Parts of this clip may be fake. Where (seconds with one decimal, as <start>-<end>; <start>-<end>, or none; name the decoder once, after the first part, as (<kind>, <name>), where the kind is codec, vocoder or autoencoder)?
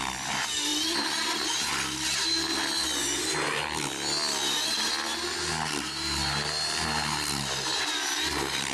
none